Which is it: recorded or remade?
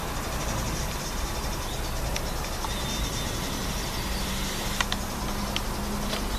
recorded